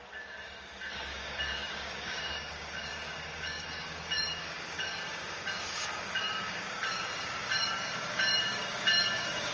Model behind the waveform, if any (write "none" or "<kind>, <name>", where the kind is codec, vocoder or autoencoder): codec, DAC